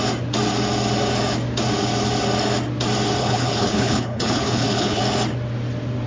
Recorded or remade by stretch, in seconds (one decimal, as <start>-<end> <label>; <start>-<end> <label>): 0.0-3.2 recorded; 3.2-5.0 remade; 5.0-6.1 recorded